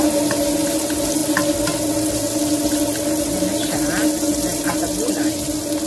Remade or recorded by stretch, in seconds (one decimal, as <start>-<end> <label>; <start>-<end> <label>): 0.0-5.9 recorded